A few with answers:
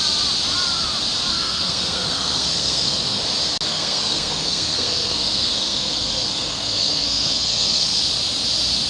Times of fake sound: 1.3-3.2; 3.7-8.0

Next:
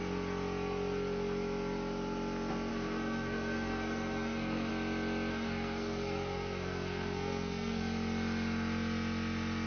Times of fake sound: 2.7-4.7; 5.3-7.8